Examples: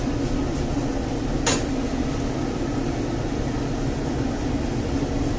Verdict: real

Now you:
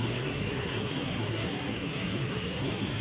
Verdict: fake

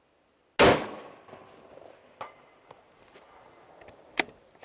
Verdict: real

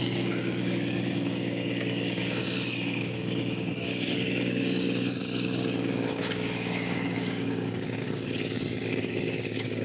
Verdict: fake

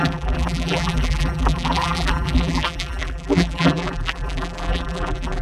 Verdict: fake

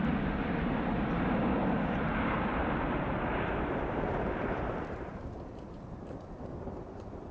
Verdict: fake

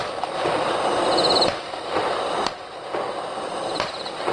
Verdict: real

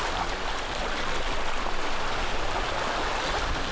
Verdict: real